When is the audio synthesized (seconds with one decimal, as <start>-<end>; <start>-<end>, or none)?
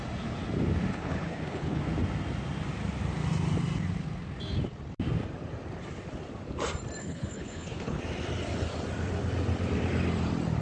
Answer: 0.9-1.8; 7.0-8.0